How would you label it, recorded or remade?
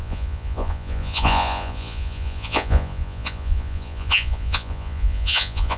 remade